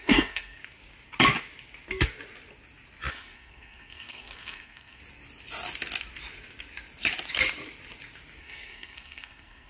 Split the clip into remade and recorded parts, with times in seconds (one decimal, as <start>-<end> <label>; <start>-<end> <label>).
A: 0.0-0.6 remade; 0.6-3.1 recorded; 3.1-5.0 remade; 5.0-8.4 recorded; 8.4-9.7 remade

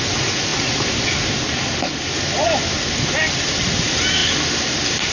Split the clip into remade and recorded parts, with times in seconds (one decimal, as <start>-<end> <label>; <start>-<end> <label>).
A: 0.0-5.1 recorded

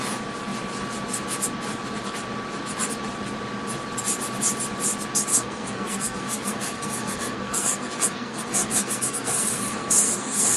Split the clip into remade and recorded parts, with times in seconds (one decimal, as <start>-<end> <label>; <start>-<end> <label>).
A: 0.0-5.3 recorded; 5.3-10.6 remade

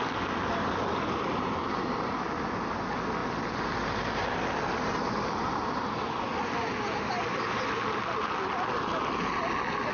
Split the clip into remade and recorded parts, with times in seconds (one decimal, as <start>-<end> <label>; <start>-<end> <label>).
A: 0.0-9.9 recorded

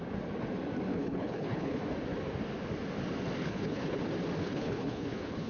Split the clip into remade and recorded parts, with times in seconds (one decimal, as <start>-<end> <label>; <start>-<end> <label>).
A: 0.0-0.9 recorded; 0.9-1.8 remade; 1.8-3.4 recorded; 3.4-4.0 remade; 4.0-4.4 recorded; 4.4-5.5 remade

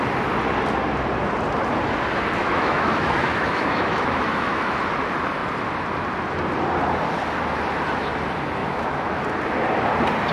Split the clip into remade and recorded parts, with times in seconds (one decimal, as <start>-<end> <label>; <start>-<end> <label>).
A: 0.0-2.4 recorded; 2.4-4.8 remade; 4.8-8.6 recorded; 8.6-9.2 remade; 9.2-10.3 recorded

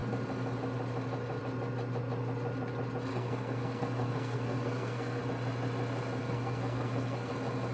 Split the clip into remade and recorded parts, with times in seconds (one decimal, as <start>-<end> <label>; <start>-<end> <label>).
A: 0.0-3.1 recorded; 3.1-5.2 remade; 5.2-6.2 recorded; 6.2-7.3 remade; 7.3-7.7 recorded